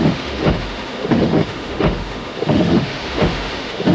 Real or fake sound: fake